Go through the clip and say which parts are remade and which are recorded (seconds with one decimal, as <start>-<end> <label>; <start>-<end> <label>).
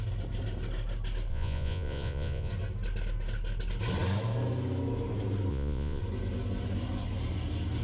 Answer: 0.0-1.3 recorded; 1.3-2.5 remade; 2.5-5.5 recorded; 5.5-6.0 remade; 6.0-7.8 recorded